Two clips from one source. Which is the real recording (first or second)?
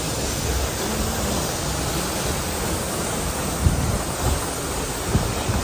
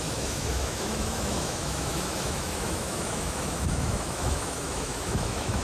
first